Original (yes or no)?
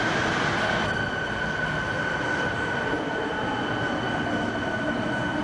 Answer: yes